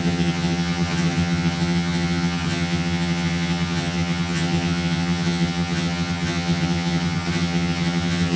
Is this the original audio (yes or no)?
no